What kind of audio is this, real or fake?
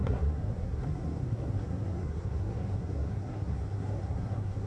fake